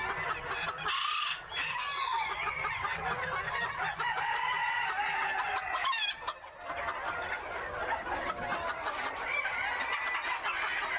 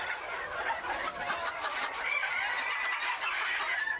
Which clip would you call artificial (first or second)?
second